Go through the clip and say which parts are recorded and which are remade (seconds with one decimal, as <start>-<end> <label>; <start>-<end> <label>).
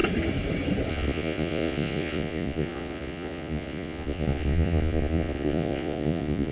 0.0-0.9 recorded; 0.9-6.5 remade